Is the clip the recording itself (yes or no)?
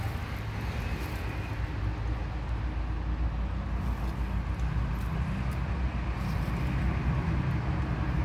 yes